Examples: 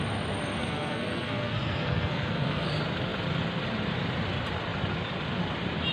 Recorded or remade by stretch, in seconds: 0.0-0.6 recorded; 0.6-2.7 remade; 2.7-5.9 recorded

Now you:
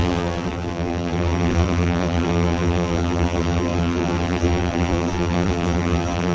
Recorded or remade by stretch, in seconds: 0.0-6.3 remade